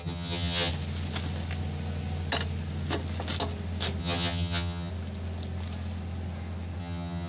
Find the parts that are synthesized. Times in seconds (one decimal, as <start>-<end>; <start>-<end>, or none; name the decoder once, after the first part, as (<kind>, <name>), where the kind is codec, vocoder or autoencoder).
0.0-0.7 (vocoder, HiFi-GAN); 4.0-4.9; 6.8-7.3